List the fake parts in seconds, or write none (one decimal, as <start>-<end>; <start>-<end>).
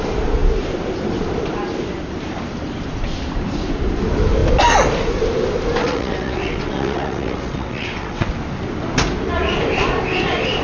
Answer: 5.8-8.3